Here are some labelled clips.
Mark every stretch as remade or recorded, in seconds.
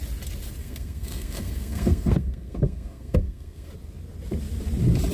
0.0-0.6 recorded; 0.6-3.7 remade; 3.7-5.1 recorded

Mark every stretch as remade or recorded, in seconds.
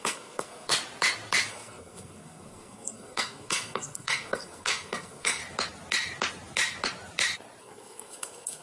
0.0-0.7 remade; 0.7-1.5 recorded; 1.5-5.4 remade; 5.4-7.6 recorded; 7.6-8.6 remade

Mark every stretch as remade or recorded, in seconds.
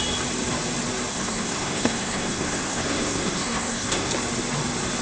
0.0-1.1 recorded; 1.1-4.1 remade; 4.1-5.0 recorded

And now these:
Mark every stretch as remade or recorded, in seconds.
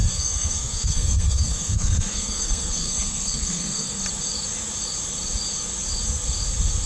0.0-4.0 remade; 4.0-6.9 recorded